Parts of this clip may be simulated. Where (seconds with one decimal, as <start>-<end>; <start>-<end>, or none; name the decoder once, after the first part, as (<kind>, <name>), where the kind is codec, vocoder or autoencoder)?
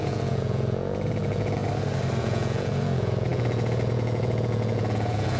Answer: 0.0-1.6 (vocoder, Vocos); 2.2-5.4